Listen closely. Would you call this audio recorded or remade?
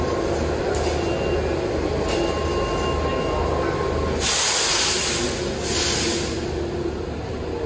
recorded